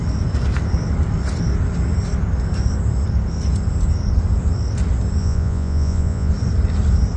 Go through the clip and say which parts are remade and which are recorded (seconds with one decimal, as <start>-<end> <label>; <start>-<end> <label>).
0.0-5.2 recorded; 5.2-6.3 remade; 6.3-7.2 recorded